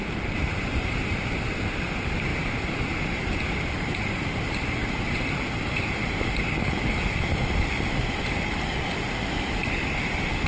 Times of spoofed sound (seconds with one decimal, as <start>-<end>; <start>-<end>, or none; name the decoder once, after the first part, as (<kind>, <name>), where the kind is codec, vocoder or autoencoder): 0.0-4.8 (vocoder, BigVGAN v2); 7.9-9.6